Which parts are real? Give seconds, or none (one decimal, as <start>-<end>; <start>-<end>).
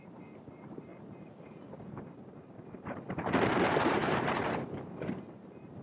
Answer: none